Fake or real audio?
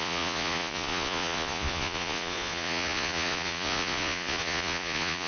fake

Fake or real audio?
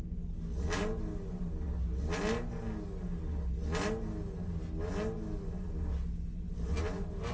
real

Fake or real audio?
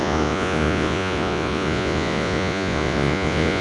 fake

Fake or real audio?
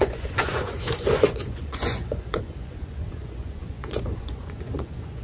fake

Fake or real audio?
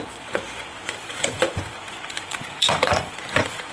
fake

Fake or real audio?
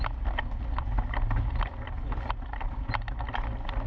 real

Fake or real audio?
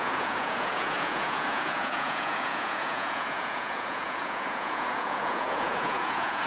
fake